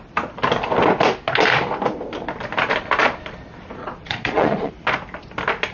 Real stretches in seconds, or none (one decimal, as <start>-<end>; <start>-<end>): 0.0-3.8; 4.7-5.7